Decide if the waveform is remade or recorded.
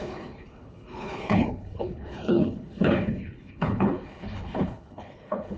remade